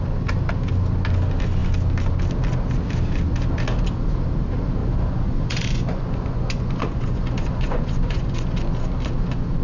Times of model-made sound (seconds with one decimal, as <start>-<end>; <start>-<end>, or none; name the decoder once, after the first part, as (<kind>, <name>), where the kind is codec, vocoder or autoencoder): 4.8-8.6 (vocoder, Vocos)